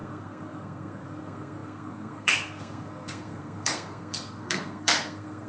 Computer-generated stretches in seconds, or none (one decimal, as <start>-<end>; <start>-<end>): 0.0-5.5